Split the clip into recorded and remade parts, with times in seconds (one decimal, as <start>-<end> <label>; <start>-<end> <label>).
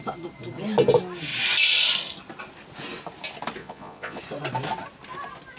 0.0-3.6 recorded; 3.6-4.2 remade; 4.2-5.6 recorded